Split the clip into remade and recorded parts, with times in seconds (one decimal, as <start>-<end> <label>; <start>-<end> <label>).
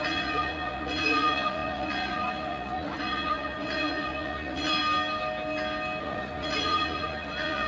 0.0-4.8 remade; 4.8-6.0 recorded; 6.0-7.7 remade